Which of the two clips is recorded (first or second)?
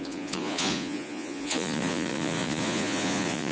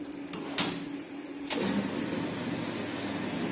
second